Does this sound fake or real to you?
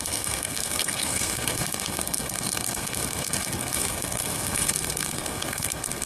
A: fake